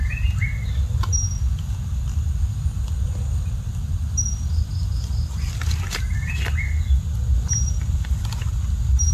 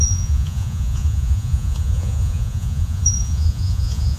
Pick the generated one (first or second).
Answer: second